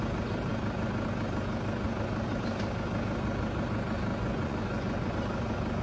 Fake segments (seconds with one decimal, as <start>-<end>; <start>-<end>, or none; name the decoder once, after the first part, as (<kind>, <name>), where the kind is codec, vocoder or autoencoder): 4.1-5.1 (vocoder, Vocos)